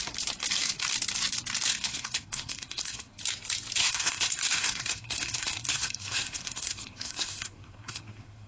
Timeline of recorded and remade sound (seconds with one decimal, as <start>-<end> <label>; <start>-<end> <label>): 0.0-1.7 recorded; 1.7-3.2 remade; 3.2-3.8 recorded; 3.8-8.5 remade